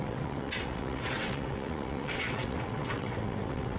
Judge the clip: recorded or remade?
remade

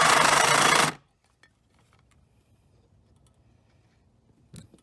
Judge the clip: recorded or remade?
recorded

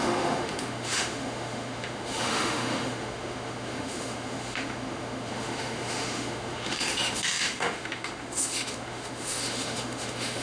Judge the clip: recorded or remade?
remade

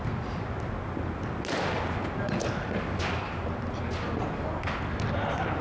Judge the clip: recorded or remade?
recorded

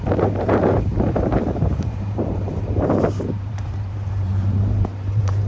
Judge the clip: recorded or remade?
remade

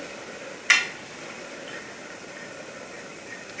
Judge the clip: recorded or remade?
recorded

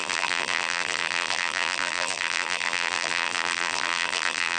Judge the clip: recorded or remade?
remade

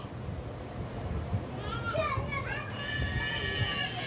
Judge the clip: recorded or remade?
recorded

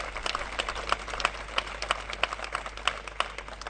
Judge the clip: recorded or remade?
recorded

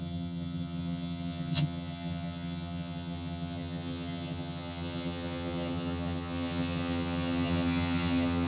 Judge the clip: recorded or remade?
remade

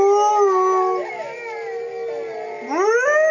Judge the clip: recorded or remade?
recorded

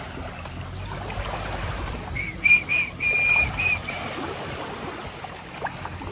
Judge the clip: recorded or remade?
recorded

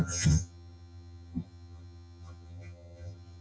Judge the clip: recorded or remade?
remade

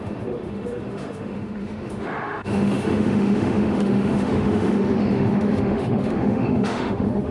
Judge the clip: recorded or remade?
remade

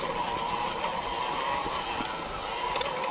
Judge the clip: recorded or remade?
recorded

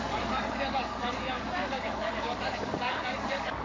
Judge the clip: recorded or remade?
remade